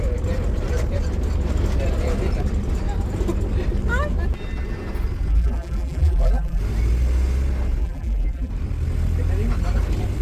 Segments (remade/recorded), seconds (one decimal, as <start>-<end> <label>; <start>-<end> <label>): 0.0-5.3 recorded; 5.3-6.6 remade; 6.6-7.8 recorded; 7.8-8.5 remade; 8.5-10.2 recorded